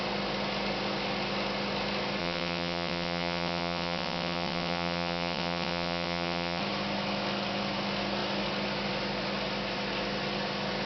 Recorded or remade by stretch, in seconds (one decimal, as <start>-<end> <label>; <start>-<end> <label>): 0.0-2.2 recorded; 2.2-6.6 remade; 6.6-10.9 recorded